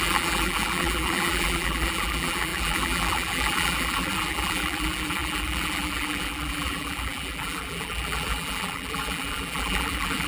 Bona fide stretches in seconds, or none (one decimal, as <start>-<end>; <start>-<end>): none

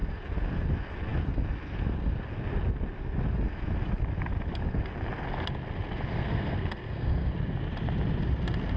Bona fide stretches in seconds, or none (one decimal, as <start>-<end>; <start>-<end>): 0.0-6.1; 7.3-8.8

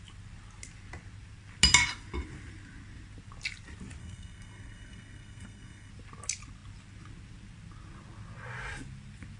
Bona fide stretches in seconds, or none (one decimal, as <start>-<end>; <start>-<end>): 0.0-4.0; 5.9-9.4

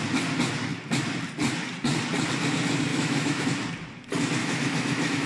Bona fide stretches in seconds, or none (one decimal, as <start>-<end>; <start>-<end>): 0.0-2.9; 3.4-4.4